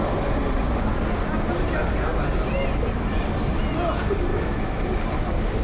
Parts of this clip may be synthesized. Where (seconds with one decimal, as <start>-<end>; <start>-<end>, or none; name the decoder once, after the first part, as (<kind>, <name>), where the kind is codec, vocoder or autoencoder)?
4.3-4.8 (autoencoder, DAC-VAE)